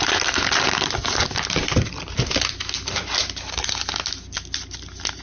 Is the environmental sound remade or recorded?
recorded